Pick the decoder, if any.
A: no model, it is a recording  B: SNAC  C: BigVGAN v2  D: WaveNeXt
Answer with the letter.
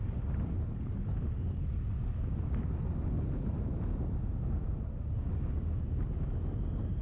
A